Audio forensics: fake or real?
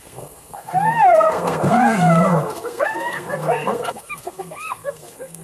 fake